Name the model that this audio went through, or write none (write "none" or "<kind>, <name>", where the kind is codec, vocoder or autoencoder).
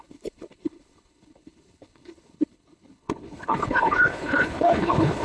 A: codec, HILCodec